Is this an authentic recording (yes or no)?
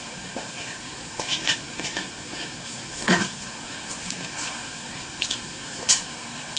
no